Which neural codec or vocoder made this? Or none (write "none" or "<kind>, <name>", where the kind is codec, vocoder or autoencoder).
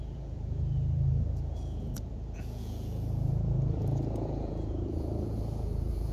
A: vocoder, Vocos